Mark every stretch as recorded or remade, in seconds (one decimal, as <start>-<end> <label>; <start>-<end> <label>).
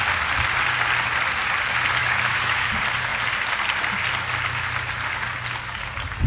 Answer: 0.0-2.0 recorded; 2.0-2.7 remade; 2.7-6.3 recorded